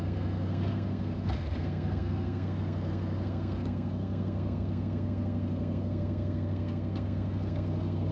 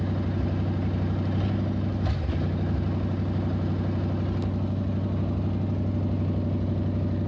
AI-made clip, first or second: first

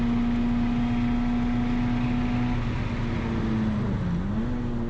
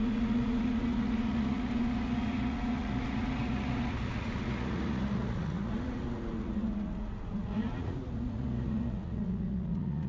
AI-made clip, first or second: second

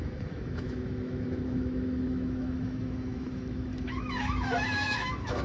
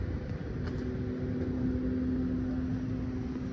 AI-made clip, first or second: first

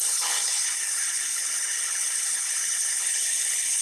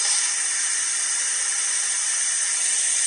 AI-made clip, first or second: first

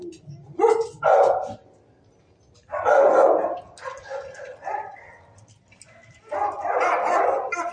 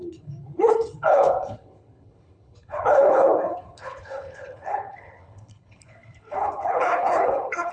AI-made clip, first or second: second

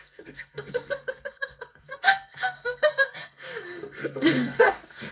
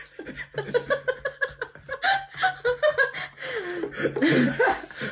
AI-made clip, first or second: first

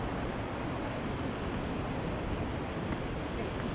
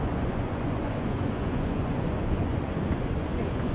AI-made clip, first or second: second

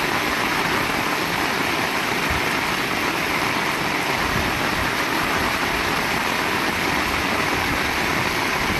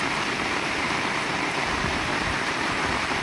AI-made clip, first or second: second